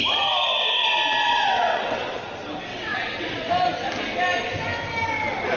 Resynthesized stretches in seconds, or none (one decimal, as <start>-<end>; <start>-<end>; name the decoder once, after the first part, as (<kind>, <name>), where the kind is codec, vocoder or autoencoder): 1.2-2.2 (vocoder, WaveNeXt); 2.7-3.5